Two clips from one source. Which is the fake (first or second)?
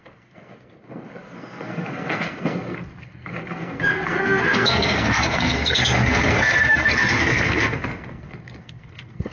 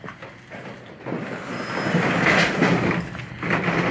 first